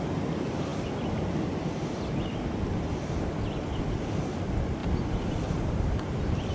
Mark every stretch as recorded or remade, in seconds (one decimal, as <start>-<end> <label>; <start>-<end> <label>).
0.0-6.5 recorded